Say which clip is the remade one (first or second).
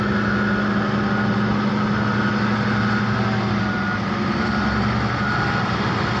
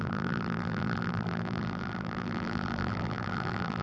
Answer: second